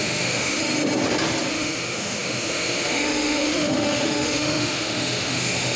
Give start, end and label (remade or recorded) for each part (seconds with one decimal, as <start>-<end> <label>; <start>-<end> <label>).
0.0-0.6 remade; 0.6-1.5 recorded; 1.5-5.8 remade